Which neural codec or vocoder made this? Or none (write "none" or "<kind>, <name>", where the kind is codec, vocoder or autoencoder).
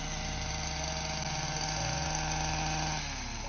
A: none